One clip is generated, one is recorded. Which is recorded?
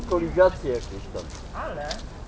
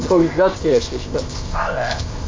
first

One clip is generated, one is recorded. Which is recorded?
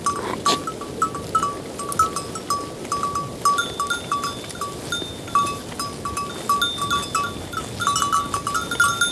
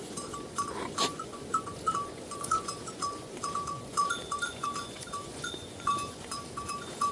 first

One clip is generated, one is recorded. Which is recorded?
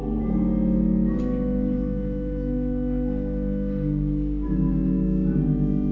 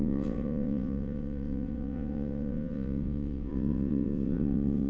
first